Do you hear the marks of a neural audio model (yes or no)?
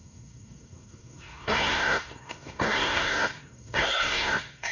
yes